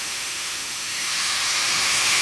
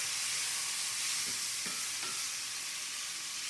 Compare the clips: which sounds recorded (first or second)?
second